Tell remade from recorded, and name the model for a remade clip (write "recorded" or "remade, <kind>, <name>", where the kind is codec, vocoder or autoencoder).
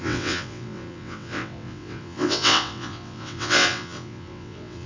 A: remade, vocoder, WaveNeXt